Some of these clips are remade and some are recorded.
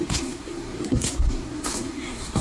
remade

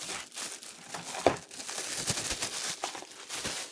recorded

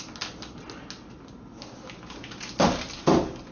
recorded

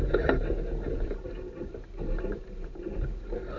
recorded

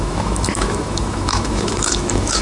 remade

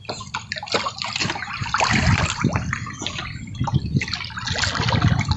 recorded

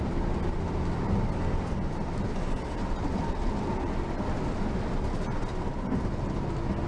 recorded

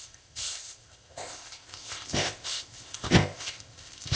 remade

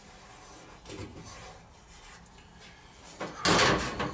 recorded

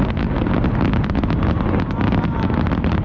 recorded